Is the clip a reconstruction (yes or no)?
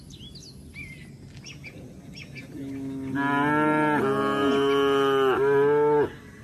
no